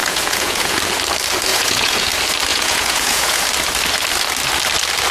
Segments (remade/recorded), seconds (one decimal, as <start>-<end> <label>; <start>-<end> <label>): 0.0-0.8 remade; 0.8-1.5 recorded; 1.5-2.1 remade; 2.1-2.5 recorded; 2.5-3.4 remade; 3.4-5.1 recorded